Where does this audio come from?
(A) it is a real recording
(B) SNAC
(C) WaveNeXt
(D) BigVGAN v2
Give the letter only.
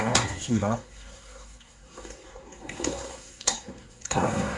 B